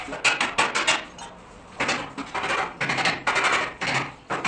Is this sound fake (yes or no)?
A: no